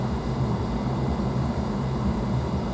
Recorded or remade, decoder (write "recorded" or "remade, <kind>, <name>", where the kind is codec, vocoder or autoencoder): remade, vocoder, BigVGAN v2